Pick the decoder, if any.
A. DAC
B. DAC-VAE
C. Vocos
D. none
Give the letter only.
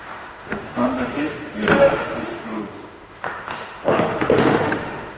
B